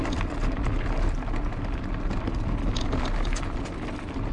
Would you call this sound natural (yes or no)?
yes